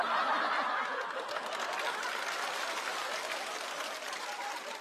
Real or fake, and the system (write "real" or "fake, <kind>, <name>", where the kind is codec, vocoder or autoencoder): fake, vocoder, BigVGAN v2